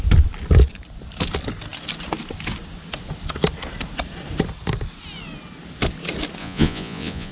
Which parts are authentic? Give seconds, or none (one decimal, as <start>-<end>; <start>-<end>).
0.0-6.4